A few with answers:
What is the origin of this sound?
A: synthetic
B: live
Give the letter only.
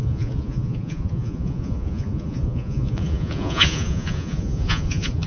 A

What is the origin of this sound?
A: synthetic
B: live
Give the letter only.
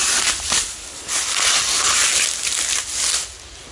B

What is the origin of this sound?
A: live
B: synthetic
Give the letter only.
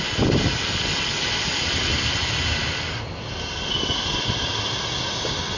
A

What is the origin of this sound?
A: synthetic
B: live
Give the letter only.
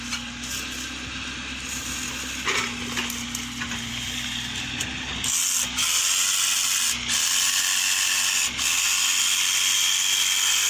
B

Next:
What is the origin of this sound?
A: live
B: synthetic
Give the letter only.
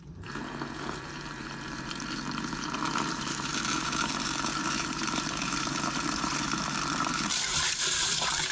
B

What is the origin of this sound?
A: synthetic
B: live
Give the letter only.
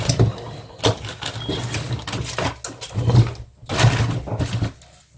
B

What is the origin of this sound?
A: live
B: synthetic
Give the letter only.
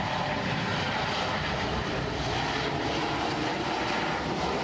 A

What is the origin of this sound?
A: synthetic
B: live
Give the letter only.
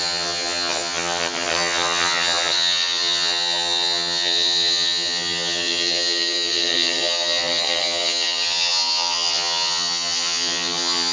A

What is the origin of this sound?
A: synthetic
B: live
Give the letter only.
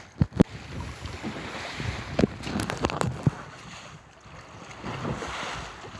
B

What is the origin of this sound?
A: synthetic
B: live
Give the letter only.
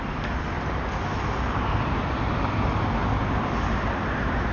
B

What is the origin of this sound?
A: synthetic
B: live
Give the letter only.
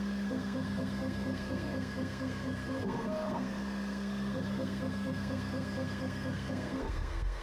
A